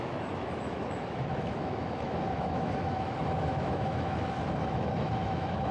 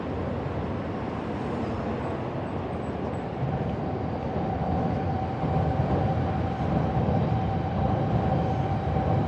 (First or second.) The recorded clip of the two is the second